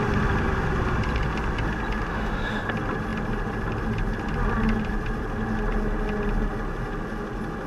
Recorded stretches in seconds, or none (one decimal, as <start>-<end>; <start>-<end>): 0.0-2.1; 2.7-7.7